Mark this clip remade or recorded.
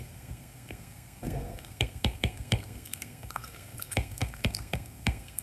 remade